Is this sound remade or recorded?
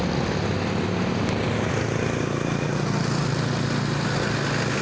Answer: recorded